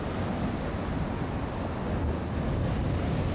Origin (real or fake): real